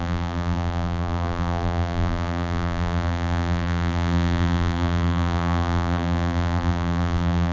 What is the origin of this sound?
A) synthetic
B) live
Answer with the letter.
A